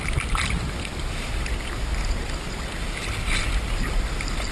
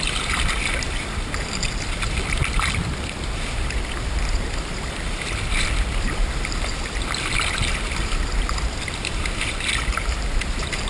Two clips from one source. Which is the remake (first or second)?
second